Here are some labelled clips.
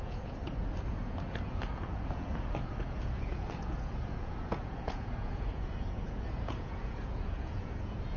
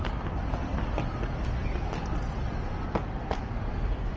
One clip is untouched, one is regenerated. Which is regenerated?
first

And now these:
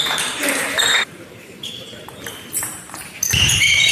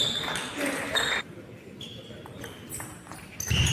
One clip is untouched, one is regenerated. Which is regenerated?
first